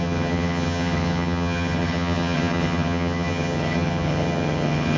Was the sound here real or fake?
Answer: fake